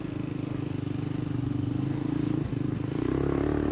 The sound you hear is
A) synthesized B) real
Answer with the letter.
B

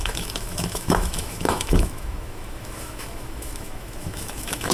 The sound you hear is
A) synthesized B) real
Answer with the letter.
A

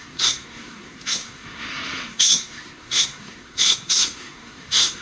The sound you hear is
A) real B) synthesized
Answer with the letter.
B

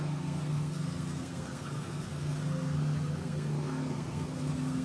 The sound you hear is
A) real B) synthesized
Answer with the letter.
B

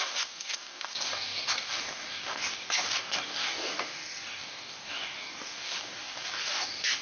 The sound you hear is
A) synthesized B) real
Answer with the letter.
A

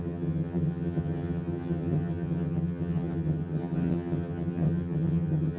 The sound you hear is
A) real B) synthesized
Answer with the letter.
B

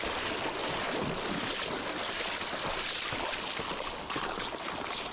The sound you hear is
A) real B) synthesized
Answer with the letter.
A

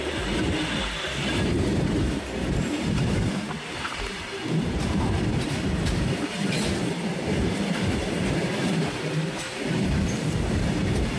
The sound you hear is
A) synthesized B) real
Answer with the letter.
A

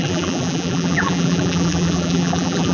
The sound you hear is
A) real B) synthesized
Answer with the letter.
B